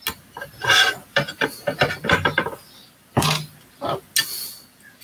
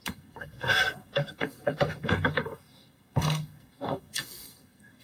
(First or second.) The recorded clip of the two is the first